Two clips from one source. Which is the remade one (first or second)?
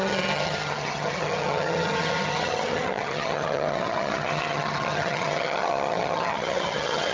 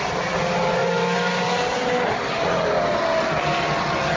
first